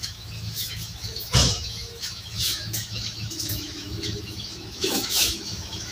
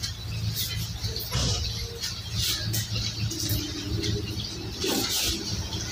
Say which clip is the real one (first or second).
second